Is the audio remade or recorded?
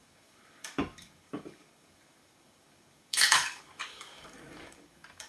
remade